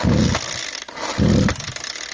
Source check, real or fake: real